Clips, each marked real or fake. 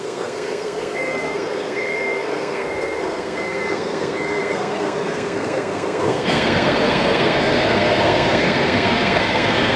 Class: fake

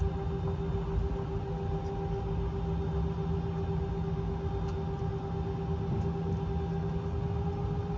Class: real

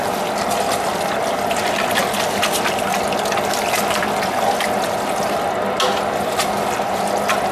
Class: real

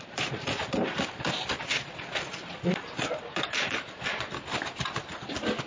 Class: real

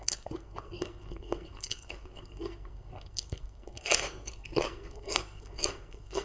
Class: fake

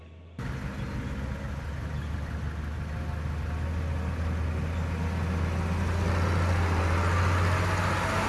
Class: real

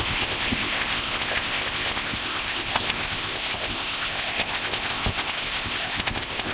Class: fake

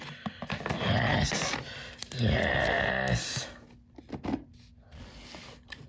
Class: real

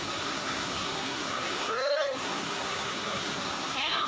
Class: fake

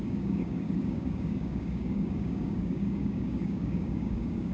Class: fake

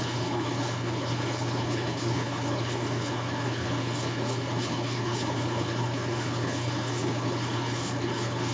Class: fake